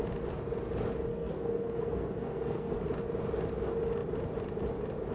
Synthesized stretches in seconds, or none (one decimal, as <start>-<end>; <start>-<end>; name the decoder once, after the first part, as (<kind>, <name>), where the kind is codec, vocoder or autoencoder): 1.1-2.7 (codec, SNAC)